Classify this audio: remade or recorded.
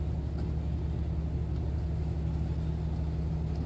recorded